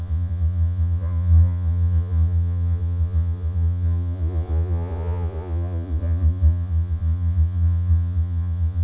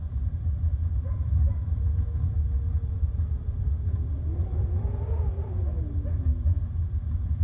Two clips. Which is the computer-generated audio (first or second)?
first